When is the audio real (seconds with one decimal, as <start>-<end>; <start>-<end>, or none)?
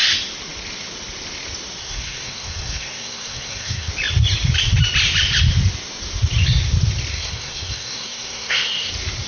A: 0.0-1.8; 3.9-7.1; 8.9-9.3